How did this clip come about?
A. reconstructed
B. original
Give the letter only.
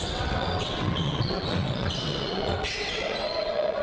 A